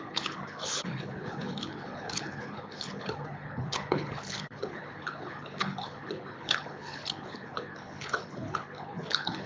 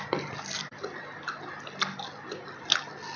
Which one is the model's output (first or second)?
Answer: first